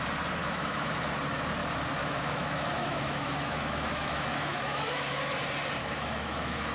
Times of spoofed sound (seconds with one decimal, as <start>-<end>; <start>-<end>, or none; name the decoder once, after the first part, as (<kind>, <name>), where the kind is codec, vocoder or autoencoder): 0.4-1.1 (autoencoder, DAC-VAE); 2.0-5.2; 5.8-6.7